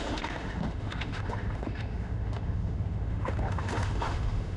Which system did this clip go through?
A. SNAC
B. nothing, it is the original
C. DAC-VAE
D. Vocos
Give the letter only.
C